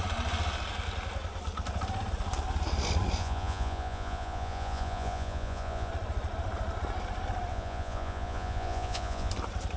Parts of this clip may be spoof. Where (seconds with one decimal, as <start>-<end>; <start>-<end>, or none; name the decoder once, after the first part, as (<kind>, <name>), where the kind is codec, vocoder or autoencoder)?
3.2-5.9 (vocoder, Vocos); 7.5-9.3